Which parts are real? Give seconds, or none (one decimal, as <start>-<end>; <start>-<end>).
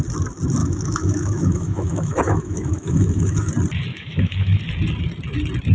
0.0-0.6; 3.5-3.9; 4.6-5.7